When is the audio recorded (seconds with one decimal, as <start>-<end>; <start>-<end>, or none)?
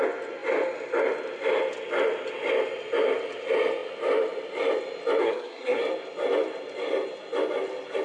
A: 0.0-5.2; 5.8-8.0